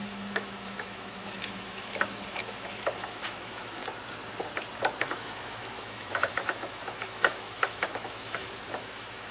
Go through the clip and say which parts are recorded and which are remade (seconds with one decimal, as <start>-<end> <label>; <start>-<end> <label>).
0.0-3.8 remade; 3.8-5.0 recorded; 5.0-9.3 remade